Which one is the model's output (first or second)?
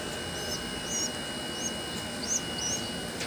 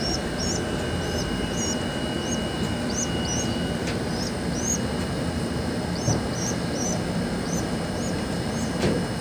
second